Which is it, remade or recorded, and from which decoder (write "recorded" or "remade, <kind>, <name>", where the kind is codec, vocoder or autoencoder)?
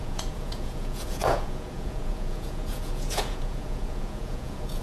remade, vocoder, Vocos